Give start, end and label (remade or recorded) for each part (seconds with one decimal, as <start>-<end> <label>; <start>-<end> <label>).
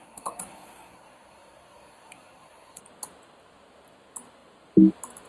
0.0-2.8 remade; 2.8-5.3 recorded